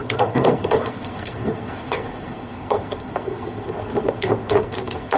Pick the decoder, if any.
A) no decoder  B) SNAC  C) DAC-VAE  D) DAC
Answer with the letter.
B